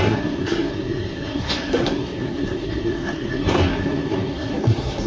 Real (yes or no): no